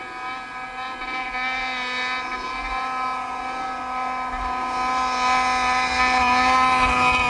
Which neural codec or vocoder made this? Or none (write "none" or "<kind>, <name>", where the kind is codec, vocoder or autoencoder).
none